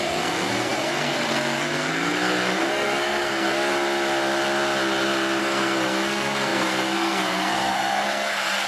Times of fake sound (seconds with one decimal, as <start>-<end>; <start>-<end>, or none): 0.0-3.7; 5.4-8.7